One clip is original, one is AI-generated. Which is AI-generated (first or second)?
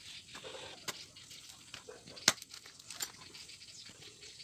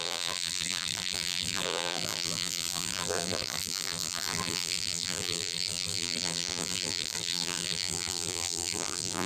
second